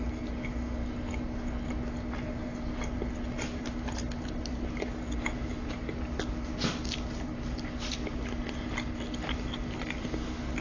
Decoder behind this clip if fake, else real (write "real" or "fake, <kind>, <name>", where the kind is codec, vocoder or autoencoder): real